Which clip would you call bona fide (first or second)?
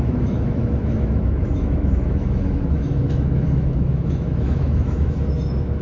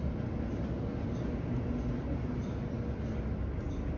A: second